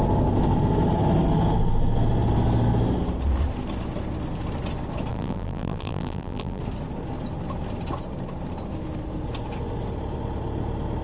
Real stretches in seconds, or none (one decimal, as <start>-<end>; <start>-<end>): 0.0-5.1; 6.6-11.0